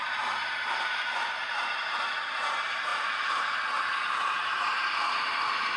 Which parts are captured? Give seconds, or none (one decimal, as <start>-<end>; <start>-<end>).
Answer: none